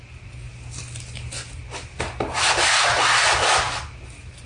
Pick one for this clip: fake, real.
real